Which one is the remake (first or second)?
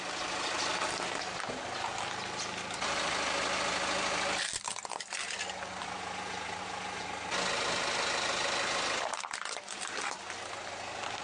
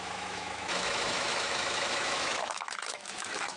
second